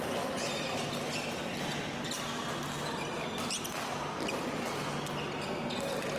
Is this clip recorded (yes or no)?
yes